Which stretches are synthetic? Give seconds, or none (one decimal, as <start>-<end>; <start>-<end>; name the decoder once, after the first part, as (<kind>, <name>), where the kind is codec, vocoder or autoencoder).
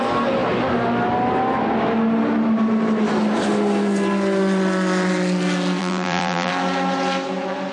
5.8-6.5 (vocoder, BigVGAN v2)